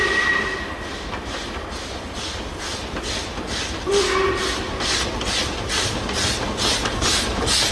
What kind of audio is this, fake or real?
real